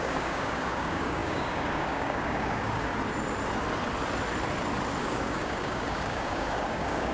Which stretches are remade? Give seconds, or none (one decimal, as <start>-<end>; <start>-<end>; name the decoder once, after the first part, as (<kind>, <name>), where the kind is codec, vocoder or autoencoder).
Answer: 0.0-2.9 (codec, DAC); 5.0-7.1

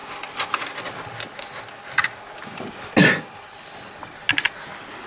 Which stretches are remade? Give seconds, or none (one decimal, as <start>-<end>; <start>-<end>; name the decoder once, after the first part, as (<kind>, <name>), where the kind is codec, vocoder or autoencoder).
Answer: none

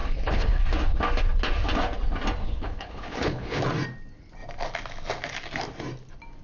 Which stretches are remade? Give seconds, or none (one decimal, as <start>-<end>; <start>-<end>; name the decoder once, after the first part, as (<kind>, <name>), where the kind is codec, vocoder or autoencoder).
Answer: 0.0-0.6 (codec, HILCodec); 2.4-3.6

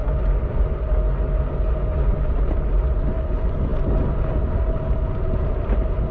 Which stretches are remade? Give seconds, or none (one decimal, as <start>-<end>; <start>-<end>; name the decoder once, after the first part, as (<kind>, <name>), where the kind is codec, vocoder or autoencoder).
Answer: 2.2-6.1 (vocoder, BigVGAN v2)